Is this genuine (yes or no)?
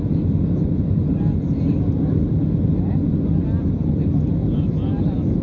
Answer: yes